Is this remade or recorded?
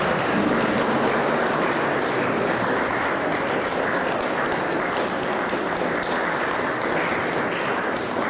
recorded